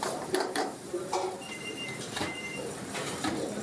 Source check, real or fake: fake